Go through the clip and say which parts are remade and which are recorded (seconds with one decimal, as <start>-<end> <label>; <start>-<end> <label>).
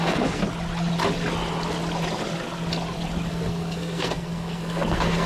0.0-0.4 remade; 0.4-3.3 recorded; 3.3-5.3 remade